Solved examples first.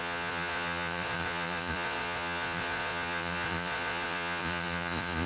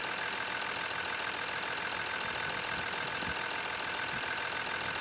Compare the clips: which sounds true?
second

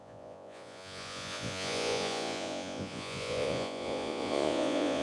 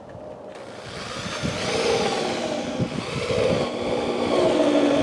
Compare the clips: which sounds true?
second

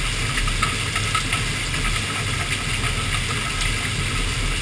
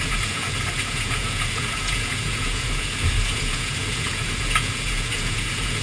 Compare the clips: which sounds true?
first